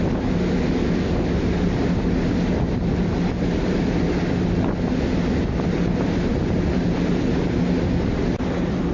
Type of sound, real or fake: real